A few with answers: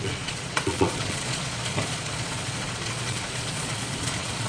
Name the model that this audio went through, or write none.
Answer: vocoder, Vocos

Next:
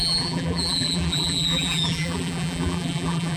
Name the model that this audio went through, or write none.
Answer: vocoder, BigVGAN v2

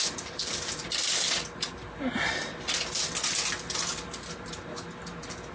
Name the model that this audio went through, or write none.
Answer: none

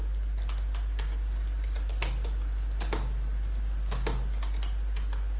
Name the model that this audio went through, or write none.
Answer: none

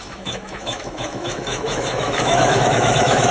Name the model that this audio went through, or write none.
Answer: autoencoder, DAC-VAE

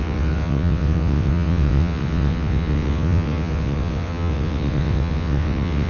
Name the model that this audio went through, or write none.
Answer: vocoder, WaveNeXt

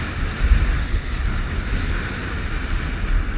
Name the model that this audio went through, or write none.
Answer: none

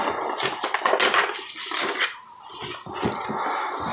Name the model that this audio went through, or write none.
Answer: none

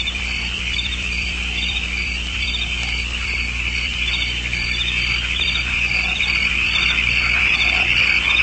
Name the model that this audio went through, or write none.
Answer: vocoder, BigVGAN v2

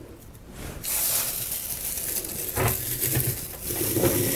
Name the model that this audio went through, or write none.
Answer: none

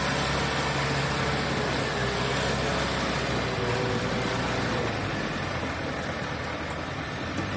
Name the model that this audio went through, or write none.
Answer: none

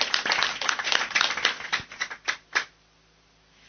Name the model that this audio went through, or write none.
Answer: none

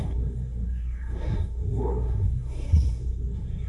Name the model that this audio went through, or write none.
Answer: codec, SNAC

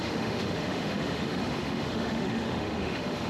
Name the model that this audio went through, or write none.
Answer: autoencoder, DAC-VAE